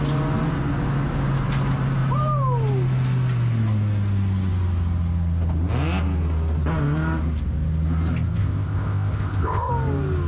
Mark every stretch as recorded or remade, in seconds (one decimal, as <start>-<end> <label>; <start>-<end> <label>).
0.0-8.4 recorded; 8.4-9.7 remade; 9.7-10.3 recorded